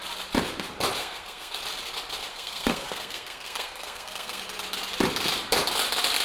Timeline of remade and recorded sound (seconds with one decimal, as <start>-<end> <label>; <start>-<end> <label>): 0.0-1.0 recorded; 1.0-1.6 remade; 1.6-2.3 recorded; 2.3-4.4 remade; 4.4-6.2 recorded